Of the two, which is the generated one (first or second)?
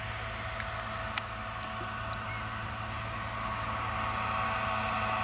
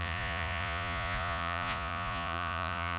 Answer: second